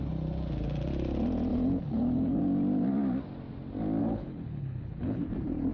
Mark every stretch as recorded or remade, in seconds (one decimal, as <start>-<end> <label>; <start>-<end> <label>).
0.0-1.5 recorded; 1.5-2.4 remade; 2.4-4.0 recorded; 4.0-5.2 remade; 5.2-5.7 recorded